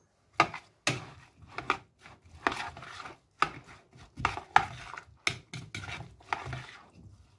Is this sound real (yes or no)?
yes